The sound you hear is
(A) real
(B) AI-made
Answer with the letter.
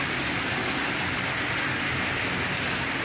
A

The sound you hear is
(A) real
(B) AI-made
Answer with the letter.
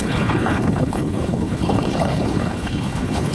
B